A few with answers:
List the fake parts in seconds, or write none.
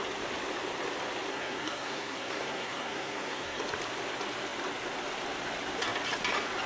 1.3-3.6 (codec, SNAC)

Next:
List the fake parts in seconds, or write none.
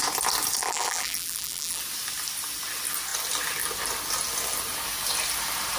0.6-1.8 (vocoder, BigVGAN v2)